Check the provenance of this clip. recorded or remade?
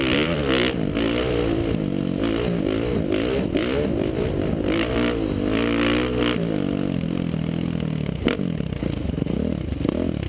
recorded